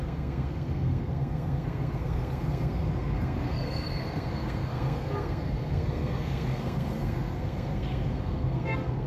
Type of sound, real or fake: fake